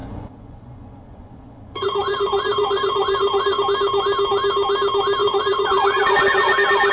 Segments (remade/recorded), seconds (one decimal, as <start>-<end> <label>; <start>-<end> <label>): 0.0-3.6 remade; 3.6-5.2 recorded; 5.2-6.5 remade; 6.5-6.9 recorded